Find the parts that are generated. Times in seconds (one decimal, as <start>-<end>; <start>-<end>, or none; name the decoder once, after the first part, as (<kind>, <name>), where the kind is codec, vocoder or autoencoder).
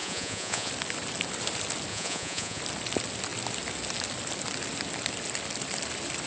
0.0-0.7 (vocoder, Vocos); 1.9-2.6